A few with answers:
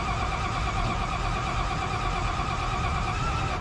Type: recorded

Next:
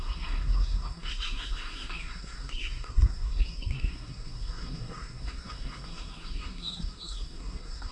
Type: remade